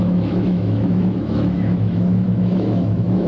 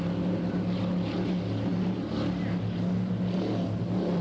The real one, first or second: second